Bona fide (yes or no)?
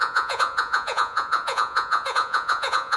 no